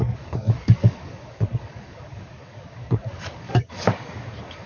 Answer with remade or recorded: remade